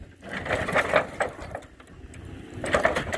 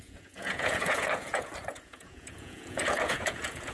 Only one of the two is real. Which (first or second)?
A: first